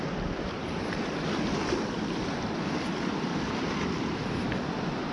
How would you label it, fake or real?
fake